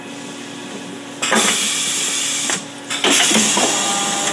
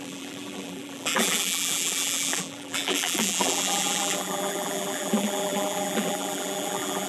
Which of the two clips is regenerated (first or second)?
second